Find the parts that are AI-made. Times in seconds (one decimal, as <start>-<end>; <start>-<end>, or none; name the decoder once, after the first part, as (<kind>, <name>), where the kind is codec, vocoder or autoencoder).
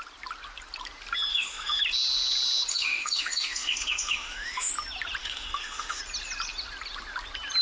1.3-1.8 (autoencoder, DAC-VAE); 2.7-4.7; 5.2-6.0